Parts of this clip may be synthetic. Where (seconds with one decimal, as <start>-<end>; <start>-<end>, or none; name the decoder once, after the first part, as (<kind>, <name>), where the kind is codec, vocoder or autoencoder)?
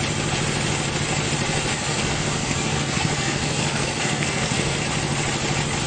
1.7-4.8 (codec, SNAC)